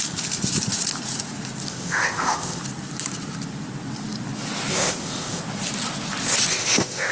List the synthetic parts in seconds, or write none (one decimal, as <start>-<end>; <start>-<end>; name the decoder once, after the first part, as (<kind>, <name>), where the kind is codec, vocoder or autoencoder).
1.7-2.6 (codec, ZipCodec); 4.7-5.4; 6.5-7.1